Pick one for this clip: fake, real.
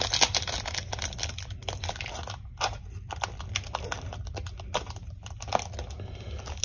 real